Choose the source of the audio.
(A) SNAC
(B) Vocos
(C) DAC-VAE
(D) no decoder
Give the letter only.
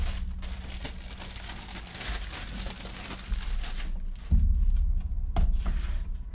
D